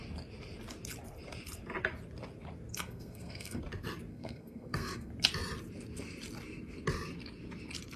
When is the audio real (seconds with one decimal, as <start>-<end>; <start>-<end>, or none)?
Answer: 0.0-2.7; 3.6-4.1; 5.1-8.0